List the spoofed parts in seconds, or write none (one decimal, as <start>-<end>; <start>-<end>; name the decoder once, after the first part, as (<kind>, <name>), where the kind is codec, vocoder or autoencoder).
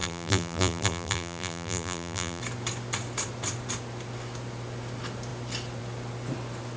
0.0-2.4 (vocoder, BigVGAN v2)